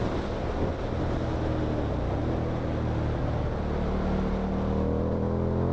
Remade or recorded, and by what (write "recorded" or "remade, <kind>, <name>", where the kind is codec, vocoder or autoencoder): recorded